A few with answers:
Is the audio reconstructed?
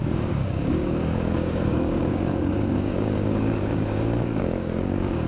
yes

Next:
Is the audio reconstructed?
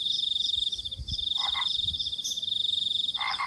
no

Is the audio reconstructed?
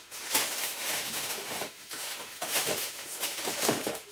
yes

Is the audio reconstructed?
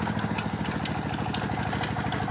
no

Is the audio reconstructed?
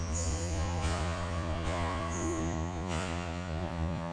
yes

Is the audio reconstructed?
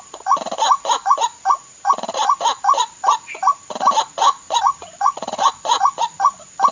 yes